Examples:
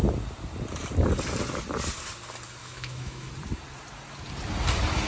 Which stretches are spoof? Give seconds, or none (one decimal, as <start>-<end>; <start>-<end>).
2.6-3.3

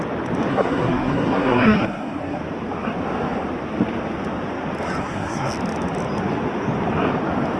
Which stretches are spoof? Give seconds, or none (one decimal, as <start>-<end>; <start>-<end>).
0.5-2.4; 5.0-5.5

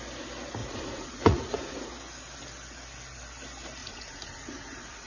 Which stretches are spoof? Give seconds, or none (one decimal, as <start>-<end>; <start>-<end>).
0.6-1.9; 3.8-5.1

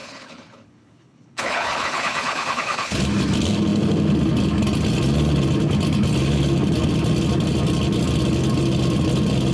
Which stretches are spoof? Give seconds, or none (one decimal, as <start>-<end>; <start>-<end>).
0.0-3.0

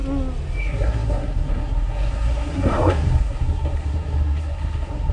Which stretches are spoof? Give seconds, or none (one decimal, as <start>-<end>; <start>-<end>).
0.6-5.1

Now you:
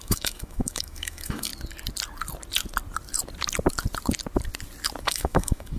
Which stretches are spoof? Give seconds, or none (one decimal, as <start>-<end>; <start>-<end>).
0.0-1.5; 5.0-5.8